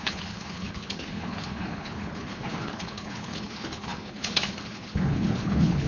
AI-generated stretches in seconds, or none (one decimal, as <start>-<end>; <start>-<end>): 0.0-5.9